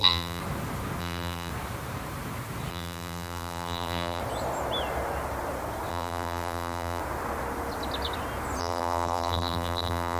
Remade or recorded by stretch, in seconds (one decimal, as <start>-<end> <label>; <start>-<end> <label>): 0.0-0.4 remade; 0.4-1.0 recorded; 1.0-1.5 remade; 1.5-2.7 recorded; 2.7-4.2 remade; 4.2-5.9 recorded; 5.9-7.0 remade; 7.0-8.6 recorded; 8.6-10.2 remade